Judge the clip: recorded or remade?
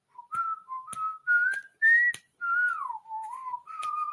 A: recorded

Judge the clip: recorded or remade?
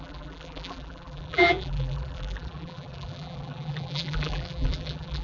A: remade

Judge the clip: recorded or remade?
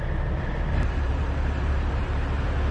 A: remade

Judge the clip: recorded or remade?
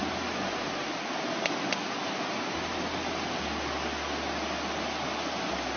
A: recorded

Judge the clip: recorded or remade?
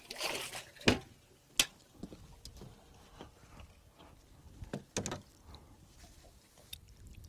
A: recorded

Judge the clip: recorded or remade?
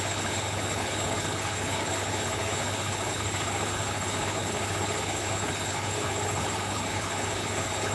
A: remade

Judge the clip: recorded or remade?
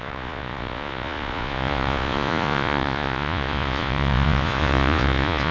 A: remade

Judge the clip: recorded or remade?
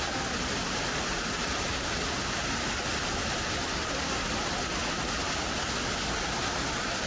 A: recorded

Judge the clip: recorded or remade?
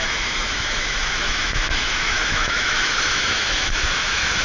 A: remade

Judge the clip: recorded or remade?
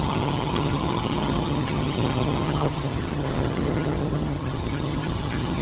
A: remade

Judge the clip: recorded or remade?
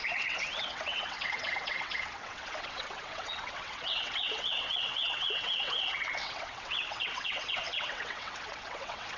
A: remade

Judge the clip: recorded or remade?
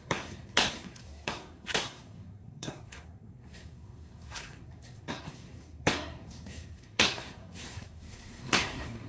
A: remade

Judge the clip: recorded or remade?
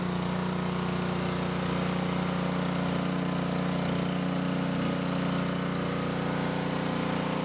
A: recorded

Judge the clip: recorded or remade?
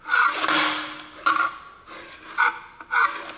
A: recorded